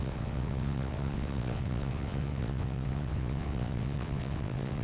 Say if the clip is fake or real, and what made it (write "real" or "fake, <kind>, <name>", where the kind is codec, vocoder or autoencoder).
fake, vocoder, WaveNeXt